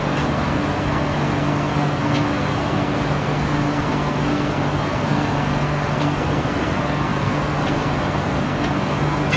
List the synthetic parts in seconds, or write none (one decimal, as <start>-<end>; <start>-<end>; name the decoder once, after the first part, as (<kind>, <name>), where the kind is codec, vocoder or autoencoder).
0.0-9.4 (codec, SNAC)